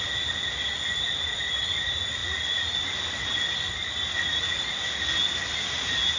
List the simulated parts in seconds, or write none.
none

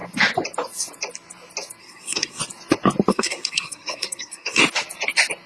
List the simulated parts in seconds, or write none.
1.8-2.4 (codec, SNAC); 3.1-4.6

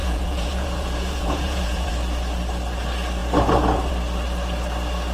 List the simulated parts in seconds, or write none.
0.0-1.9 (vocoder, Vocos)

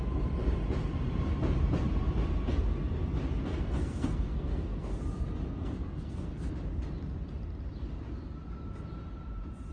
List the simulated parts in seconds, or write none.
3.4-5.0 (codec, SNAC); 5.6-6.5

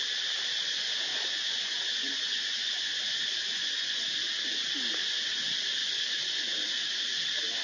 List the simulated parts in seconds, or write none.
1.1-4.1 (vocoder, Vocos); 5.8-6.4

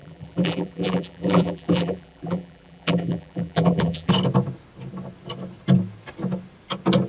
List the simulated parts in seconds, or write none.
0.0-4.1 (vocoder, BigVGAN v2)